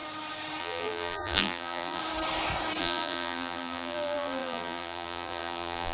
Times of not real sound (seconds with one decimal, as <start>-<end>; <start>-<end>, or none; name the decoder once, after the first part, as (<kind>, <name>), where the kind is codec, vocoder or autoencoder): 0.6-2.0 (vocoder, BigVGAN v2); 2.8-5.9